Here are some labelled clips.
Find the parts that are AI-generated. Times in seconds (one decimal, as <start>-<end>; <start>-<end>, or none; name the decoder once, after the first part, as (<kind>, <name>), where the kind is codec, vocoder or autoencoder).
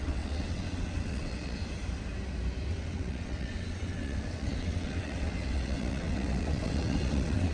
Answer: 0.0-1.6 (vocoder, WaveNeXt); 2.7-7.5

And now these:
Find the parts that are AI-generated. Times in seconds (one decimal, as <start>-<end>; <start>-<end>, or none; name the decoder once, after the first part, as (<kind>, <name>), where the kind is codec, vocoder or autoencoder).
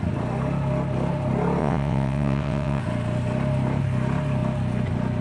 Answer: 1.6-2.8 (vocoder, WaveNeXt)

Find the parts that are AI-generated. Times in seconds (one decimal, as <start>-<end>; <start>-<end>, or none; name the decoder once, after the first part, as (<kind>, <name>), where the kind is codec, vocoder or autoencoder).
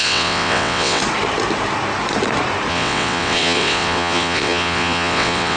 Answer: 0.0-1.0 (vocoder, WaveNeXt); 2.7-5.6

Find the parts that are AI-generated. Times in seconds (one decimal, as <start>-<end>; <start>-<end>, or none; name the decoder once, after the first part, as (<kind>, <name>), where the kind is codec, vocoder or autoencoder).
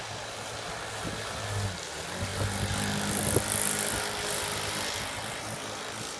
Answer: none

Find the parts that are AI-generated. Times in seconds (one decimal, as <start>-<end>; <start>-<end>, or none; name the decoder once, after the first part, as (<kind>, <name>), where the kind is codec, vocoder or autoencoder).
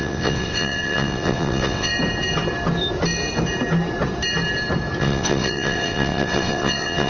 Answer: 0.0-1.9 (vocoder, WaveNeXt); 5.0-7.1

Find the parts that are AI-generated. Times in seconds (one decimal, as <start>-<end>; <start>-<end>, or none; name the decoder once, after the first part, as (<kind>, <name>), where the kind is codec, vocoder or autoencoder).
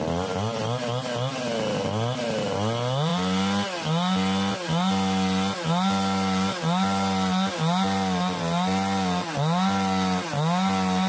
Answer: none